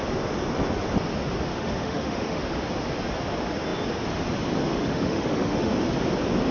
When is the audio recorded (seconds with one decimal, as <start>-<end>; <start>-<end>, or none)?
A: 0.0-1.5; 2.4-4.7; 5.7-6.5